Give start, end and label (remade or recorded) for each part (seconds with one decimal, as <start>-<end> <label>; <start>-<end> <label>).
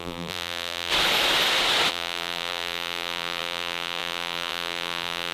0.0-0.9 remade; 0.9-1.9 recorded; 1.9-5.3 remade